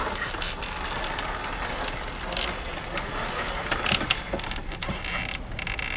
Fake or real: real